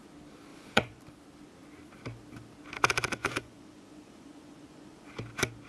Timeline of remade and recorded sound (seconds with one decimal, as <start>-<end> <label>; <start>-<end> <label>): 0.0-0.5 recorded; 0.5-1.0 remade; 1.0-3.2 recorded; 3.2-5.2 remade; 5.2-5.7 recorded